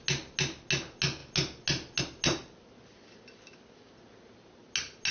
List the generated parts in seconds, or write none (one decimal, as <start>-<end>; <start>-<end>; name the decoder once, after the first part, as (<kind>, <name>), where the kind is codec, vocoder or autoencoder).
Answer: none